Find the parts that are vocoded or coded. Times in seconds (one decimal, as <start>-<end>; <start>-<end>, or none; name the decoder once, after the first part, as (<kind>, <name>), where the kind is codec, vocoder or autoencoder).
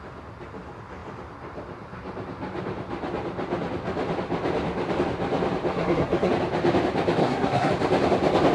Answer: 5.7-6.3 (codec, SNAC); 7.2-7.7